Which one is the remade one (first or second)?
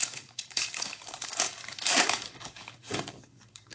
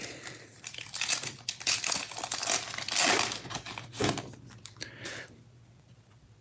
first